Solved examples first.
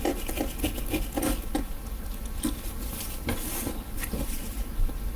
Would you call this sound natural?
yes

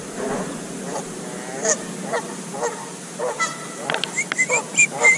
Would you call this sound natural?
yes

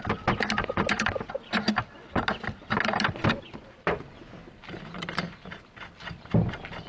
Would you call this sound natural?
yes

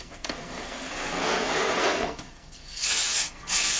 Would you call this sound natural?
no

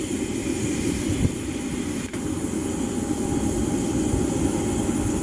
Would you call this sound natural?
yes